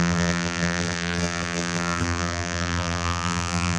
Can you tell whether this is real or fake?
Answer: fake